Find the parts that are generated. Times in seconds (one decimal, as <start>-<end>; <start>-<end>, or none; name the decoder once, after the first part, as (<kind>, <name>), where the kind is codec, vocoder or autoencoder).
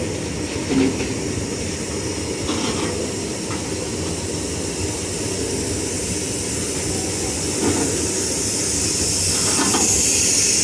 6.6-7.9 (vocoder, Vocos)